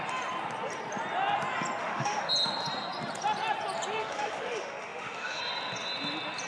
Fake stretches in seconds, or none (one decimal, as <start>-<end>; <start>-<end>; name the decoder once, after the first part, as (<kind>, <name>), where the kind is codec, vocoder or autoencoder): 1.8-2.3 (autoencoder, DAC-VAE); 4.0-5.4